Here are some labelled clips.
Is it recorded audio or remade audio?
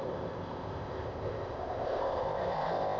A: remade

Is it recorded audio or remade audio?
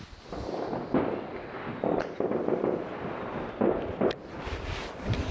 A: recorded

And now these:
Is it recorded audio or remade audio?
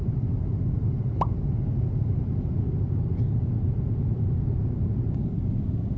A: recorded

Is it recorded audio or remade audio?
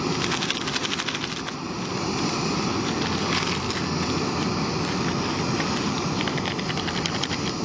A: recorded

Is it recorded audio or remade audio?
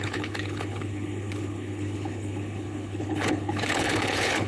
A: remade